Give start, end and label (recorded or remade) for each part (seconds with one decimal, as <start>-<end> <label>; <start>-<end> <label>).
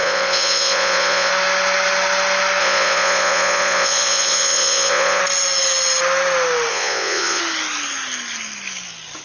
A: 0.0-1.3 remade; 1.3-2.6 recorded; 2.6-5.2 remade; 5.2-6.7 recorded; 6.7-7.4 remade; 7.4-9.2 recorded